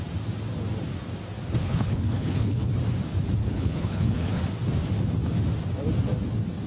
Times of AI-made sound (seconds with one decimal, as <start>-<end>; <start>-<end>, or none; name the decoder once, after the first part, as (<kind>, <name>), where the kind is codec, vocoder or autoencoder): 1.6-2.7 (codec, HILCodec); 3.4-4.4